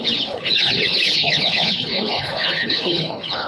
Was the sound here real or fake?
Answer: fake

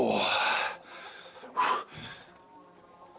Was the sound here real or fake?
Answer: real